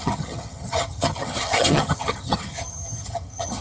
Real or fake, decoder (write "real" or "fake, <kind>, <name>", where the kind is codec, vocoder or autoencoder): fake, vocoder, HiFi-GAN